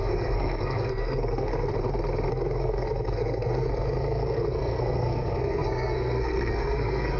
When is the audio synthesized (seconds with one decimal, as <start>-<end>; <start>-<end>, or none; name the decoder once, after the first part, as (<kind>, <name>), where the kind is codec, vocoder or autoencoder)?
0.0-1.7 (codec, SNAC); 2.3-7.2